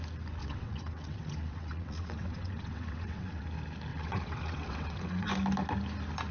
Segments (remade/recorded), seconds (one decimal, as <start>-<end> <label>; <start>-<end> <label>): 0.0-0.4 recorded; 0.4-3.4 remade; 3.4-3.9 recorded; 3.9-5.3 remade; 5.3-6.3 recorded